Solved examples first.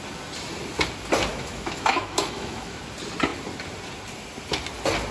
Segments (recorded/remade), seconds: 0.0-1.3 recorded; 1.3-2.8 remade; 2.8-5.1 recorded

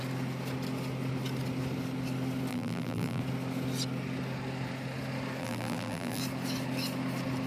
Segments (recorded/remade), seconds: 0.0-2.5 recorded; 2.5-3.2 remade; 3.2-5.4 recorded; 5.4-6.2 remade; 6.2-7.5 recorded

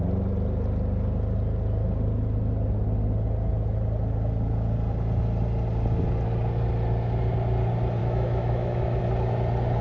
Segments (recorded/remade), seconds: 0.0-8.0 recorded; 8.0-9.0 remade; 9.0-9.8 recorded

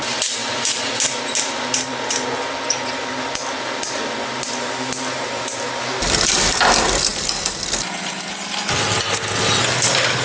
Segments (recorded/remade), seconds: 0.0-10.2 recorded

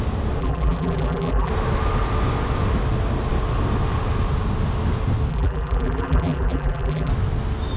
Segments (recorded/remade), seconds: 0.0-0.4 recorded; 0.4-1.5 remade; 1.5-5.3 recorded; 5.3-7.1 remade; 7.1-7.8 recorded

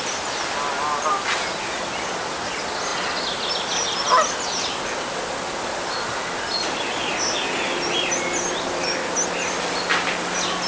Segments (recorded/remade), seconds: 0.0-10.7 recorded